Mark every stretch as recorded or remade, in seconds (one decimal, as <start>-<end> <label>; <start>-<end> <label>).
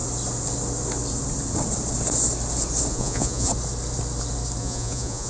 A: 0.0-2.9 recorded; 2.9-3.5 remade; 3.5-4.6 recorded; 4.6-5.3 remade